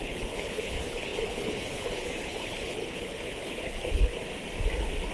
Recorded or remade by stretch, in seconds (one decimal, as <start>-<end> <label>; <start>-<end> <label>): 0.0-4.1 remade; 4.1-5.1 recorded